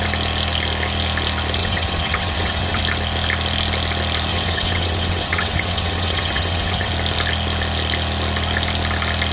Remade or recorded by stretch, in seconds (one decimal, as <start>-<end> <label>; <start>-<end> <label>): 0.0-1.6 recorded; 1.6-2.8 remade; 2.8-4.3 recorded; 4.3-6.9 remade; 6.9-9.3 recorded